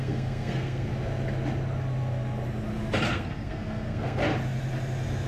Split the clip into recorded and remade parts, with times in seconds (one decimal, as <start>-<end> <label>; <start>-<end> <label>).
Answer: 0.0-0.9 remade; 0.9-3.1 recorded; 3.1-4.2 remade; 4.2-5.3 recorded